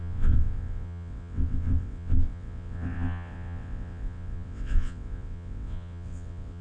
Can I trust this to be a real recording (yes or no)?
no